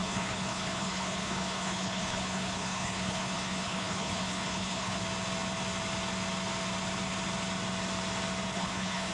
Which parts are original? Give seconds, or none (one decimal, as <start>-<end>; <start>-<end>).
5.0-8.5